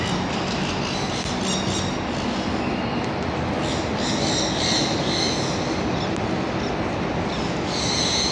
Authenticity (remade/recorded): recorded